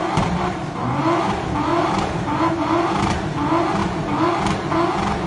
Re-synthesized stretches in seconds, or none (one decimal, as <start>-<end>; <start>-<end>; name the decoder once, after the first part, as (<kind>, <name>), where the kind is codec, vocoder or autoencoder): 1.7-2.9 (vocoder, BigVGAN v2); 3.8-4.3